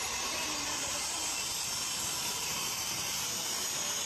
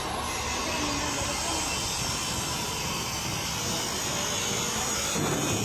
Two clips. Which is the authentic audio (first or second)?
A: second